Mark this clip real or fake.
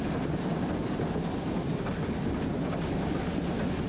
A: real